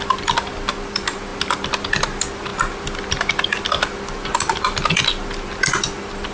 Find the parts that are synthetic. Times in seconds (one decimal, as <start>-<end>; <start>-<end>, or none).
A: none